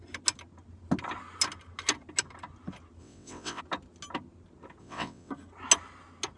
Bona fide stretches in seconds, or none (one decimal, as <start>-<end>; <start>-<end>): 0.0-3.0; 3.6-4.8; 5.3-6.4